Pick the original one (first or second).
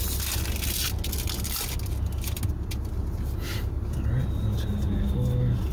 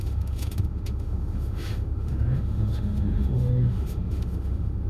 first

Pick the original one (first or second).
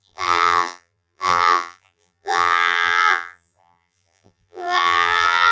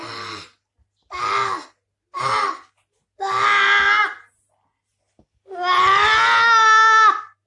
second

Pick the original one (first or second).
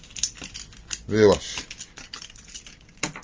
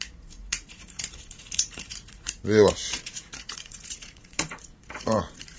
first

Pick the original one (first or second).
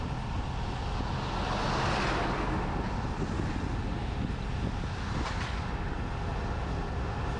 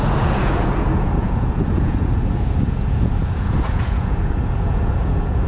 first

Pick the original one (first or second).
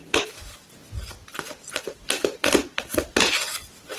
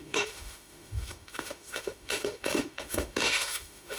first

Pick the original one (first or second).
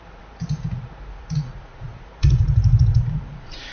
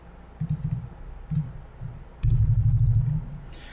second